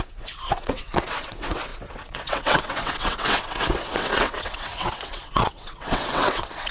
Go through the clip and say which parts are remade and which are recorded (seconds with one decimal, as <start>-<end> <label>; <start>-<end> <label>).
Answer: 0.0-6.7 remade